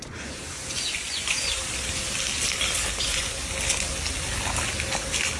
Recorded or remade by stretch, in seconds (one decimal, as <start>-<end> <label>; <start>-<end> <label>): 0.0-1.6 remade; 1.6-3.0 recorded; 3.0-3.4 remade; 3.4-5.4 recorded